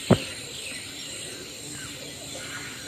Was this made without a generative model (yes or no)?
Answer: yes